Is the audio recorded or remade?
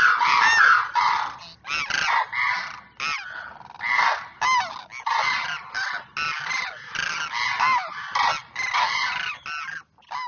recorded